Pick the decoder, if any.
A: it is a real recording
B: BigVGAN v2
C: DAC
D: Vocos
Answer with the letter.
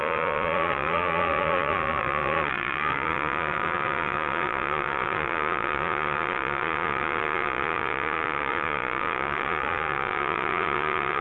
D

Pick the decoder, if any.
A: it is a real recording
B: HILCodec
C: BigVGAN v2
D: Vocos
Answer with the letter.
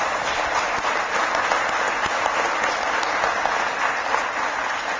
A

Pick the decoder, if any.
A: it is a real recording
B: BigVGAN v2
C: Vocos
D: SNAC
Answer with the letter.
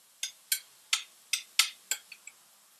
A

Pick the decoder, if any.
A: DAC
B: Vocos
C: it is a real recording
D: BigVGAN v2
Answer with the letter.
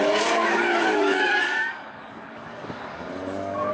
A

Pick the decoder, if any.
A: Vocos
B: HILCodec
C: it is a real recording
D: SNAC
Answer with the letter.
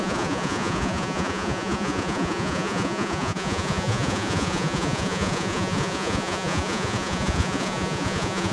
A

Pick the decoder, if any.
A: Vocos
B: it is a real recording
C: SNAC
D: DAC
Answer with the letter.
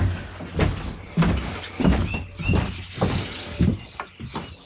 B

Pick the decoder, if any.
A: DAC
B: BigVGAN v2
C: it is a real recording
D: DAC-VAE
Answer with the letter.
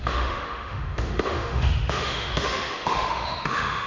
D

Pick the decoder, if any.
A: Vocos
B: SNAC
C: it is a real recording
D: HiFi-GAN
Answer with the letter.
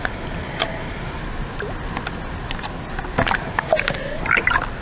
C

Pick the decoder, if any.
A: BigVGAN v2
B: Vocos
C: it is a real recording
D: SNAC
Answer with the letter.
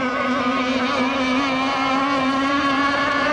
C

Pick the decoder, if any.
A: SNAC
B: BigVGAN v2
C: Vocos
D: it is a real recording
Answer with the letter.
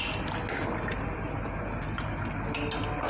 D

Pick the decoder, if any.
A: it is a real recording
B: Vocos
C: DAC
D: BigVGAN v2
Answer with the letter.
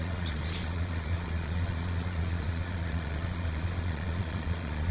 B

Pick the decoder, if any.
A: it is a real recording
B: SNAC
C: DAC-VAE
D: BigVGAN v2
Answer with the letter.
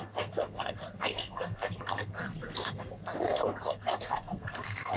B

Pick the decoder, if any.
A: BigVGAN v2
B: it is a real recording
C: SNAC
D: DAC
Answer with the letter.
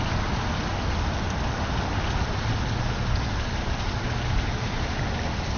B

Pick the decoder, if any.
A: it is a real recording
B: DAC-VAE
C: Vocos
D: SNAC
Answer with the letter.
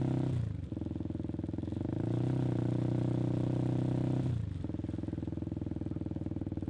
A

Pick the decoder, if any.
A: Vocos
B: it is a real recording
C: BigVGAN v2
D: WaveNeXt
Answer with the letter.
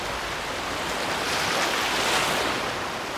B